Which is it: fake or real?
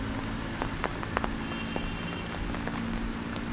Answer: real